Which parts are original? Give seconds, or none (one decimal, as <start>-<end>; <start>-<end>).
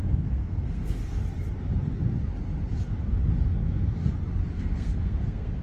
1.2-4.6